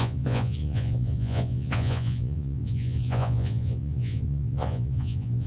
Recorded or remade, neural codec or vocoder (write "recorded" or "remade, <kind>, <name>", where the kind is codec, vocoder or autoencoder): remade, vocoder, Vocos